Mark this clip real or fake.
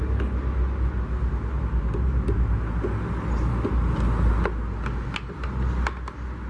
real